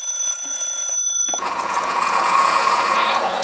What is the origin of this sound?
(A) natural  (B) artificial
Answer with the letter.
B